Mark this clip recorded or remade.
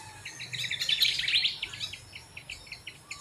recorded